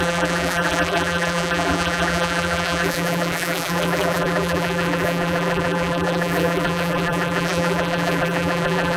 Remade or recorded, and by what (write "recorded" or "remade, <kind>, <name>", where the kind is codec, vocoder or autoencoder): remade, vocoder, BigVGAN v2